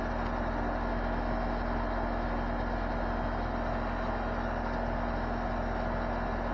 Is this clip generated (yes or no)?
no